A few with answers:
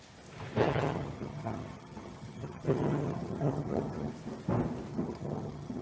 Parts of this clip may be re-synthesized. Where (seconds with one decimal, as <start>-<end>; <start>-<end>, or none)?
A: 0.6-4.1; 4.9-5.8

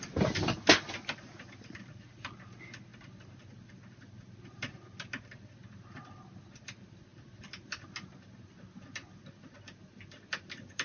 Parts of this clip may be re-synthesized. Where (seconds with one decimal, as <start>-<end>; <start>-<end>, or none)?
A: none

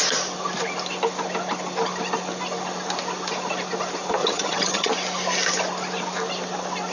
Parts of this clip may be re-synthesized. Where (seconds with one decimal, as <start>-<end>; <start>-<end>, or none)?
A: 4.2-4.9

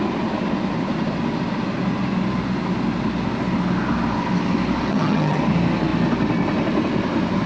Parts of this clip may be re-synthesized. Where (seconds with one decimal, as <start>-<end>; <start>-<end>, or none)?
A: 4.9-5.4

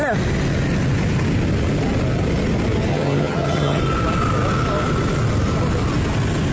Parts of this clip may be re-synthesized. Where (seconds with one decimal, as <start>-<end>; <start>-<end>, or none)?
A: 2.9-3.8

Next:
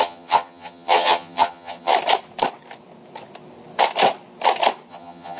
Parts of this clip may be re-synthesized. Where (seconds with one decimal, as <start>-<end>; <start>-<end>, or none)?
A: 0.0-1.9; 4.9-5.4

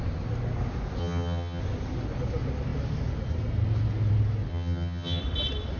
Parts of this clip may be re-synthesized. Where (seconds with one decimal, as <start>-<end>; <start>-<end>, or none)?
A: 1.0-1.6; 4.5-5.2